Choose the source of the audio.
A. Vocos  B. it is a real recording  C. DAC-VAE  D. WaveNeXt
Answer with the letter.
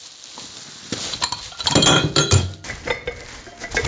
B